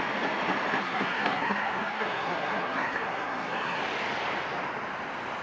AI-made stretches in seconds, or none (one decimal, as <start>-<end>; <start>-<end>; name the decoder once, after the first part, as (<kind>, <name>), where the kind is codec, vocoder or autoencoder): 0.8-3.8 (codec, SNAC)